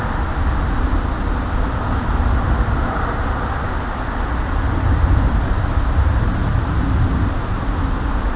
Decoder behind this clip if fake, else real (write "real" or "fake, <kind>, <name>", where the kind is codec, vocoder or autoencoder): real